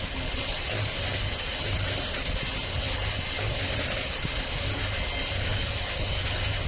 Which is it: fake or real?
real